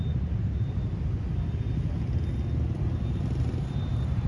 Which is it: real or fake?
real